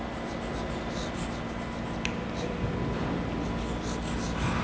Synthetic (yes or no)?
no